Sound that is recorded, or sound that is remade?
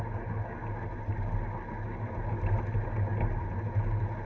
recorded